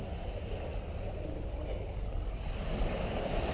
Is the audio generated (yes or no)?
no